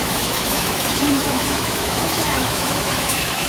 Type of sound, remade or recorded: remade